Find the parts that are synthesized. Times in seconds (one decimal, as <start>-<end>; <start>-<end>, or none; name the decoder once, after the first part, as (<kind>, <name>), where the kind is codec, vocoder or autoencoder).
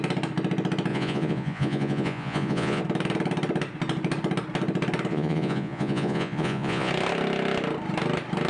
0.9-2.8 (vocoder, Vocos); 5.1-6.9